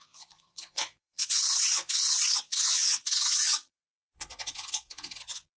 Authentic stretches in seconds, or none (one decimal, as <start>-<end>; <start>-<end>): none